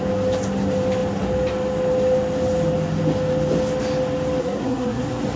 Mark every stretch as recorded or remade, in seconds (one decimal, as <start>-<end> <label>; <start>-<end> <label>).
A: 0.0-4.4 recorded; 4.4-5.0 remade; 5.0-5.4 recorded